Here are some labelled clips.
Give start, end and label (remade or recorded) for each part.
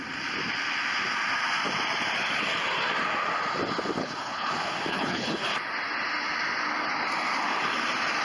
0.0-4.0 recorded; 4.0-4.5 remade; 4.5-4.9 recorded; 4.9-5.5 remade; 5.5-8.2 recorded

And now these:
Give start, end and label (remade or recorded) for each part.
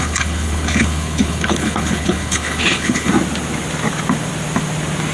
0.0-3.1 remade; 3.1-5.1 recorded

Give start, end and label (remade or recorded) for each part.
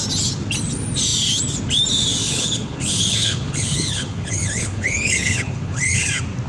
0.0-2.2 recorded; 2.2-6.1 remade; 6.1-6.5 recorded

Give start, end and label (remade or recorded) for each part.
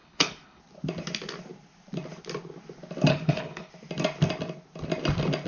0.0-0.6 remade; 0.6-3.1 recorded; 3.1-3.7 remade; 3.7-5.5 recorded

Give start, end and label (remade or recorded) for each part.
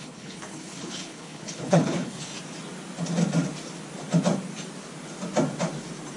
0.0-2.3 remade; 2.3-6.2 recorded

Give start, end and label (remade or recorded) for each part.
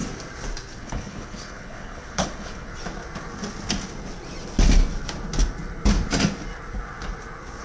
0.0-0.8 recorded; 0.8-2.7 remade; 2.7-7.6 recorded